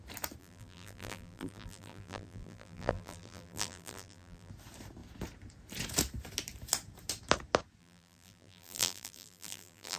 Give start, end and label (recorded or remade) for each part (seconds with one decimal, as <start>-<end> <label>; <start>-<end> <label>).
0.0-0.4 recorded; 0.4-4.5 remade; 4.5-7.8 recorded; 7.8-10.0 remade